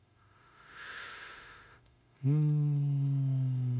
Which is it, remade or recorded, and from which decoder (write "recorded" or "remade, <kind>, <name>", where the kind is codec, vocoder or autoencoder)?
remade, autoencoder, DAC-VAE